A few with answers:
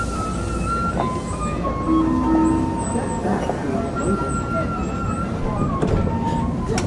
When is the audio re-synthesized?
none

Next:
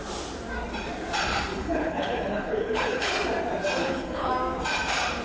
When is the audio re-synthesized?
1.5-3.1 (codec, HILCodec); 3.8-4.3